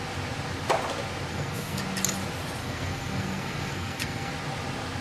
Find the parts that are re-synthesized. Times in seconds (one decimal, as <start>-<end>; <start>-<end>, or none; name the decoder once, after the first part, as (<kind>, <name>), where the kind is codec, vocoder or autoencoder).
1.3-1.8 (codec, SNAC); 2.6-4.3